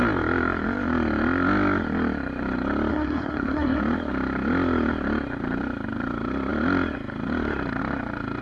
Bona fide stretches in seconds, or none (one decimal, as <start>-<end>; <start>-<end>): 0.0-2.9; 3.8-8.4